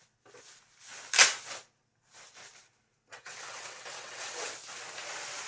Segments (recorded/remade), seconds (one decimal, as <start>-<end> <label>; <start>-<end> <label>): 0.0-3.1 recorded; 3.1-4.5 remade; 4.5-5.5 recorded